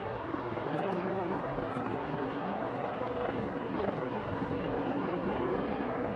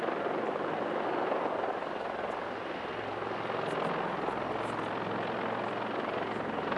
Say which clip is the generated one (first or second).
first